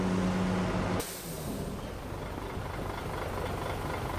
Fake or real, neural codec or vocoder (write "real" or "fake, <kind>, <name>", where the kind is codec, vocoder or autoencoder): real